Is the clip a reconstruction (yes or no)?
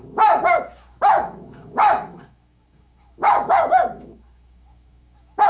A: yes